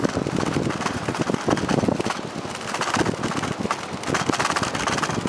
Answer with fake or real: real